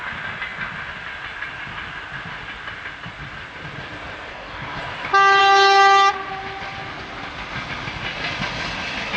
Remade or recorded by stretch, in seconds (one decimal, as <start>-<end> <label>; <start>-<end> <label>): 0.0-4.3 recorded; 4.3-4.8 remade; 4.8-9.2 recorded